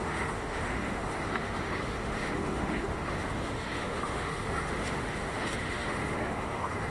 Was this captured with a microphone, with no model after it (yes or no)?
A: no